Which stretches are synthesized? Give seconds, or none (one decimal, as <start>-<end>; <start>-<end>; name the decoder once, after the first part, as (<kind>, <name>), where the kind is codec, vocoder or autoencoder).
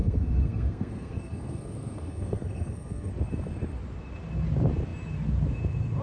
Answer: 0.0-3.1 (codec, SNAC)